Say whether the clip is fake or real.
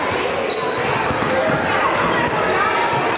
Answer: real